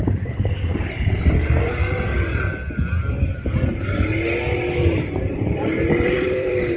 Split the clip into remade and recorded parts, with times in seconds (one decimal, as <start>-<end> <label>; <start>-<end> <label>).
0.0-2.1 remade; 2.1-5.3 recorded; 5.3-6.8 remade